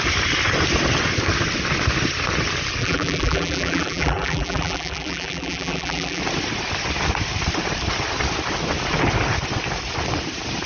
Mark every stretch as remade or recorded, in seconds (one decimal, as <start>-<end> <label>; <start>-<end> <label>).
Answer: 0.0-2.8 recorded; 2.8-6.2 remade; 6.2-10.7 recorded